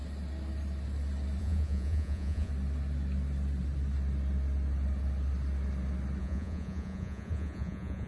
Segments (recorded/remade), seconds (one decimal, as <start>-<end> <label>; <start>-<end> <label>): 0.0-1.4 recorded; 1.4-2.5 remade; 2.5-6.2 recorded; 6.2-8.1 remade